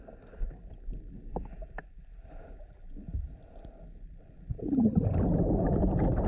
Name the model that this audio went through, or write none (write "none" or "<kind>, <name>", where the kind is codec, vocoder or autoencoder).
vocoder, BigVGAN v2